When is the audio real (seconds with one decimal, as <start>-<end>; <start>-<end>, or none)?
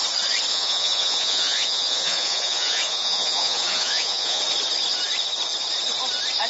0.0-0.5; 4.4-6.5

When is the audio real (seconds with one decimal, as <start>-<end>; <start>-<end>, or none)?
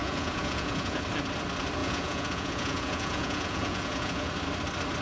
1.0-1.8; 4.3-5.0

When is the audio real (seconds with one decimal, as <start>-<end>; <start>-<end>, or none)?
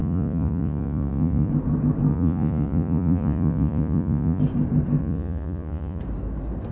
1.5-2.1; 4.4-5.0; 6.0-6.7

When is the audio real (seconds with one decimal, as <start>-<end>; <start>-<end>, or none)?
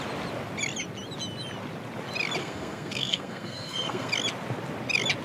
0.0-2.4; 4.1-5.2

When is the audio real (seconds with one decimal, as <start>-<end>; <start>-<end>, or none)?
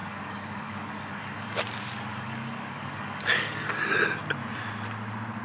1.6-2.1; 3.7-5.4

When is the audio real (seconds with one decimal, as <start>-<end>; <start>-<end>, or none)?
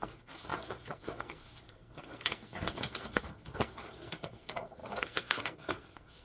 none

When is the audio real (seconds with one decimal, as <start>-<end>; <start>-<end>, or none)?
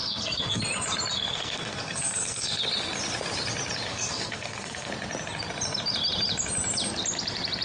0.6-1.1; 2.6-3.9; 4.9-7.6